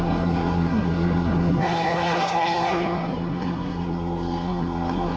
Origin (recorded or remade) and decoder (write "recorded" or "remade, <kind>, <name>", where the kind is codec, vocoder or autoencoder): remade, codec, SNAC